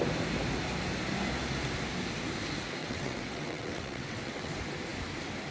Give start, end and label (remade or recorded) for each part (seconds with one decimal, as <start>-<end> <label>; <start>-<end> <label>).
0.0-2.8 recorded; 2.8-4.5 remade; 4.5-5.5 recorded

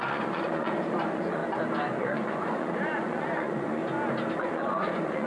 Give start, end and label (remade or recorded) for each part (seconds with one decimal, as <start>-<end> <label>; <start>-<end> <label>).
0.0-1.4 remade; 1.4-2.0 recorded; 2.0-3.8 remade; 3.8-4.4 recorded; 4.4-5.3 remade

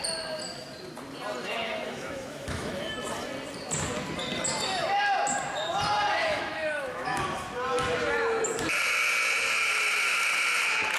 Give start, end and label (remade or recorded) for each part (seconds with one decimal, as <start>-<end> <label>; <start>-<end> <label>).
0.0-1.4 recorded; 1.4-2.9 remade; 2.9-6.2 recorded; 6.2-7.2 remade; 7.2-11.0 recorded

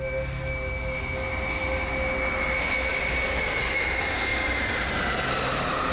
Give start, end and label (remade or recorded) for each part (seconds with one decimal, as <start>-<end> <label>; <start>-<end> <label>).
0.0-4.3 recorded; 4.3-5.0 remade; 5.0-5.9 recorded

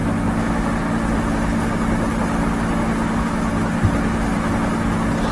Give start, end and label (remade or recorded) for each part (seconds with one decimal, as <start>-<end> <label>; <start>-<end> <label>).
0.0-5.3 recorded

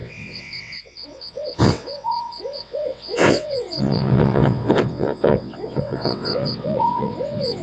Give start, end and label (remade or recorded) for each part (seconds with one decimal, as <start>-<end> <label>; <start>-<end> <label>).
0.0-7.6 remade

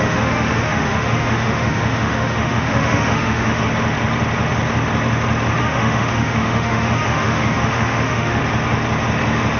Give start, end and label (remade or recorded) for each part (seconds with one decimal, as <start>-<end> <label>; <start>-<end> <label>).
0.0-3.7 remade; 3.7-5.6 recorded; 5.6-8.4 remade; 8.4-9.6 recorded